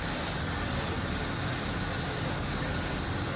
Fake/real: real